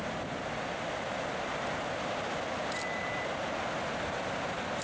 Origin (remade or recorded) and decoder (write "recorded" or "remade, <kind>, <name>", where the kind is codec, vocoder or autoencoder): recorded